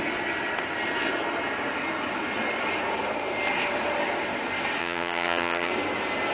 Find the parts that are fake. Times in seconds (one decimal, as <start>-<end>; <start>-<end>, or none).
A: 4.8-5.7